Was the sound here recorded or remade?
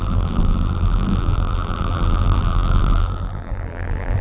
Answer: remade